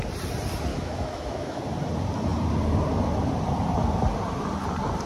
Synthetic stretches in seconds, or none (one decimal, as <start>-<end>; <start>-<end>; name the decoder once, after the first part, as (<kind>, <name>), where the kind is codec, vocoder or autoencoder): 0.7-1.6 (autoencoder, DAC-VAE)